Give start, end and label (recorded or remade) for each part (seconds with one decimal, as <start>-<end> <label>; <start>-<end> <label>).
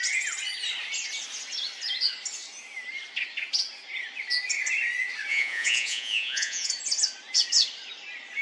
0.0-5.3 recorded; 5.3-6.7 remade; 6.7-8.4 recorded